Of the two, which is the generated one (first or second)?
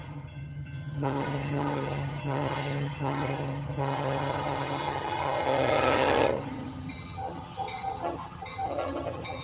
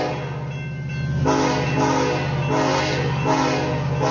first